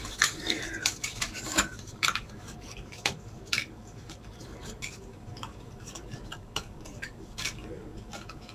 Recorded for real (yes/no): no